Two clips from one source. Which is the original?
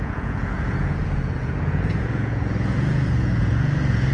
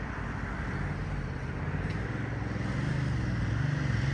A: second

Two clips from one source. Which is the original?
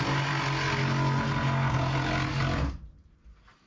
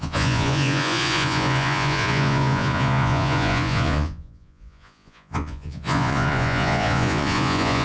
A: first